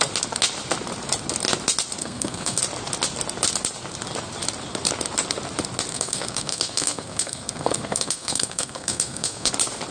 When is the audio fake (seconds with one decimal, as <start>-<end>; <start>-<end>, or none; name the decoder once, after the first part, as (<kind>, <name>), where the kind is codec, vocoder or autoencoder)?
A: 2.0-2.6 (codec, SNAC); 5.9-9.5